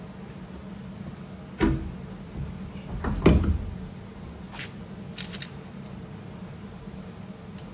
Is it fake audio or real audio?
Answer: real